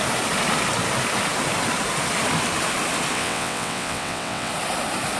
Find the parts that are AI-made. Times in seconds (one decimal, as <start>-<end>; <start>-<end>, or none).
3.1-4.5

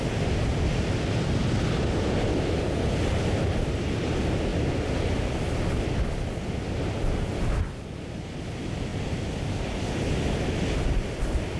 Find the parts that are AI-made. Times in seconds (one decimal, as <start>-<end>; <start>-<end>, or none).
none

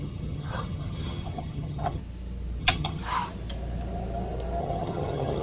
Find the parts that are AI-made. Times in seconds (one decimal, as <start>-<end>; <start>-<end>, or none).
0.0-2.0; 2.6-3.0; 4.6-5.4

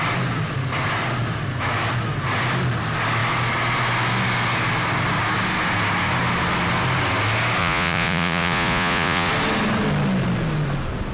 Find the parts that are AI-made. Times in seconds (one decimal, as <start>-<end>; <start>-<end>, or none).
7.6-9.3

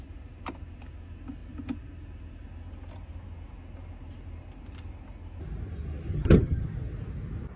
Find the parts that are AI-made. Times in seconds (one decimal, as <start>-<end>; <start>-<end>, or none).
6.1-6.7

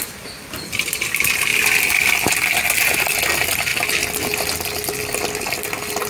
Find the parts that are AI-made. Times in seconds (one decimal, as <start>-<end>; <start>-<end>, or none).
0.0-3.7; 5.0-6.1

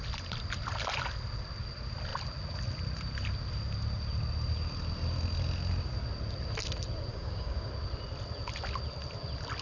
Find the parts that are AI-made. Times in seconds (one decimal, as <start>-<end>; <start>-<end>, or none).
7.1-7.7